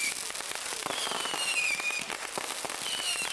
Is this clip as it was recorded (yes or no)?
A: yes